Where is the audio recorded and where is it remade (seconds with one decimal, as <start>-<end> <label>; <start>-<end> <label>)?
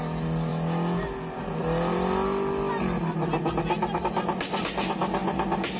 0.0-5.8 recorded